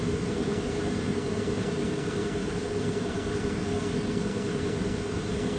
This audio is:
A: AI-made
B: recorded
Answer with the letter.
A